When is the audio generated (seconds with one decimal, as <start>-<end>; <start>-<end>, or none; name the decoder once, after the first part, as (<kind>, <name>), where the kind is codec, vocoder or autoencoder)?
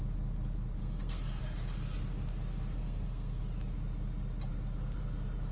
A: 0.8-1.4 (codec, SNAC); 2.8-3.4